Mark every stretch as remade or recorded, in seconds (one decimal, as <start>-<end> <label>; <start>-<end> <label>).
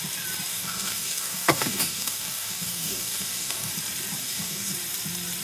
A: 0.0-0.5 recorded; 0.5-3.7 remade; 3.7-4.2 recorded; 4.2-4.7 remade; 4.7-5.4 recorded